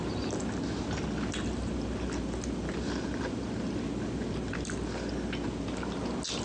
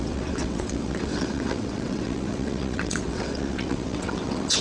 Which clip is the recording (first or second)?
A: first